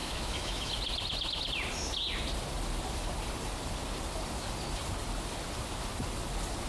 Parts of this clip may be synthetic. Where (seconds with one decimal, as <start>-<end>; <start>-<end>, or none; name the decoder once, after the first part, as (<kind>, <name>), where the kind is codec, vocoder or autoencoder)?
0.0-0.7 (autoencoder, DAC-VAE)

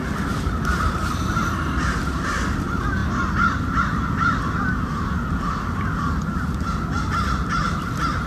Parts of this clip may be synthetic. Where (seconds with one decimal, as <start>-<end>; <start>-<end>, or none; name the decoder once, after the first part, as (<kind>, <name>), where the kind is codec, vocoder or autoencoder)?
0.7-1.3 (vocoder, BigVGAN v2)

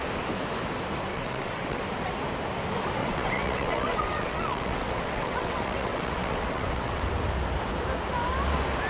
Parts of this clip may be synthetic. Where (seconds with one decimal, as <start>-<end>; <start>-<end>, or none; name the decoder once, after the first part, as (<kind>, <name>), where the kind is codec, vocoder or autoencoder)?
1.1-1.8 (vocoder, WaveNeXt); 3.0-7.1

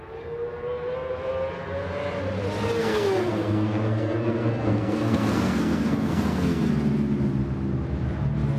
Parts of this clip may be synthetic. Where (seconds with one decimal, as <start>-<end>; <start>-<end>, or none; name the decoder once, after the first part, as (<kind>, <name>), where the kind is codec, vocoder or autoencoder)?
2.8-6.7 (codec, SNAC)

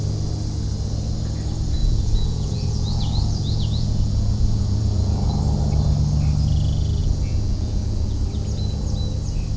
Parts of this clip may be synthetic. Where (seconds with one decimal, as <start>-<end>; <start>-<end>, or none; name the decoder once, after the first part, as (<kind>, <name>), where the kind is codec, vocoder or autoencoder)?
1.8-5.4 (vocoder, Vocos); 7.0-8.2

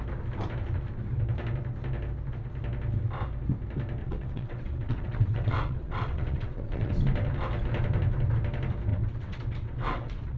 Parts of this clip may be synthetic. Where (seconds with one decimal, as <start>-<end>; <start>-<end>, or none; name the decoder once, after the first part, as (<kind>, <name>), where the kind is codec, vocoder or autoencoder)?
4.0-6.9 (vocoder, WaveNeXt); 8.9-10.4